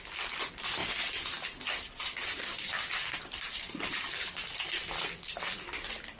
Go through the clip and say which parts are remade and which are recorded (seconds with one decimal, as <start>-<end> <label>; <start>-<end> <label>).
0.0-0.8 recorded; 0.8-4.5 remade; 4.5-6.2 recorded